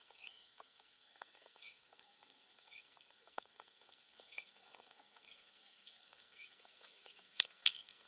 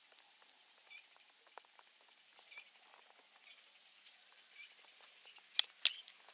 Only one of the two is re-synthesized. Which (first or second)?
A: first